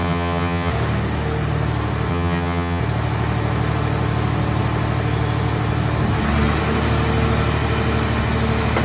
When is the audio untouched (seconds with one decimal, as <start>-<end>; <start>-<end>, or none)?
0.7-2.1; 2.8-8.8